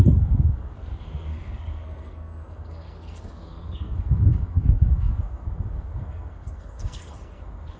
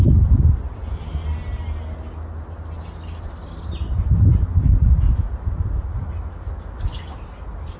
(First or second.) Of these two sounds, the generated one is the first